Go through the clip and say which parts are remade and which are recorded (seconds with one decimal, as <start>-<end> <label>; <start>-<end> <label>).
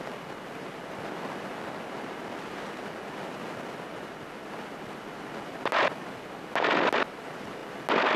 0.0-8.2 recorded